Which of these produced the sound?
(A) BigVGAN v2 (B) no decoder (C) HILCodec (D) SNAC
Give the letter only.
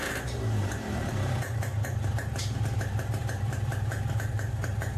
A